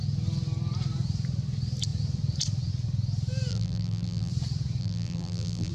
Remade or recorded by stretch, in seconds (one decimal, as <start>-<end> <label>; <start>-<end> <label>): 0.0-3.5 recorded; 3.5-4.3 remade; 4.3-4.8 recorded; 4.8-5.7 remade